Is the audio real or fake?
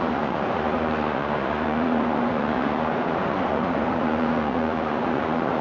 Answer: fake